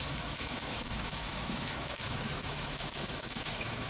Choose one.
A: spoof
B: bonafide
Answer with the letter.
A